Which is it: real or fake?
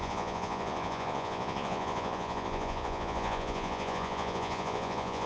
fake